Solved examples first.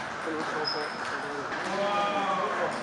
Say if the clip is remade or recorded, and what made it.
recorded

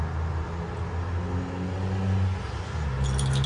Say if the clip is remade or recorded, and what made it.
recorded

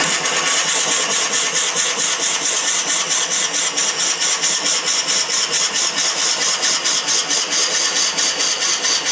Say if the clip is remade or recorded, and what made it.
recorded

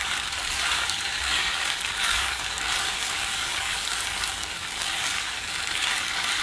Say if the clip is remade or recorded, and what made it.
remade, codec, DAC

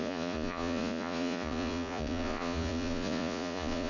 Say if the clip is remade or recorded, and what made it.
remade, vocoder, Vocos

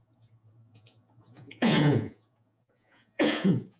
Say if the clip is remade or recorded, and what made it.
remade, vocoder, Vocos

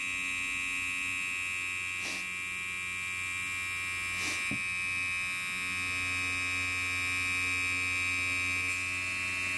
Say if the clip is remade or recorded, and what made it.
recorded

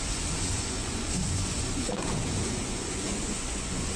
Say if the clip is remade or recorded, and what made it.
remade, vocoder, Vocos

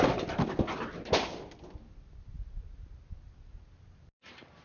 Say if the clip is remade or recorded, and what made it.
recorded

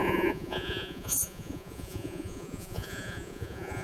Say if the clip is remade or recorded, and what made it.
remade, vocoder, Vocos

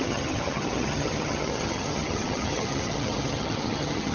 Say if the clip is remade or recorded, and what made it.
remade, vocoder, HiFi-GAN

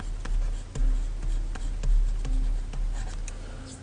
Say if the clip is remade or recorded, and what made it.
recorded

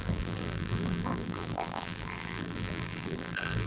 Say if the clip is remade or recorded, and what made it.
remade, vocoder, BigVGAN v2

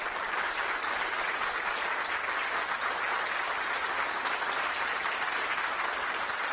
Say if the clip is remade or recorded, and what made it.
recorded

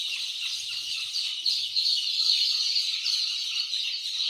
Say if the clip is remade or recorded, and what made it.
recorded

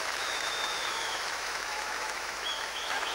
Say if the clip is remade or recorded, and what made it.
remade, autoencoder, DAC-VAE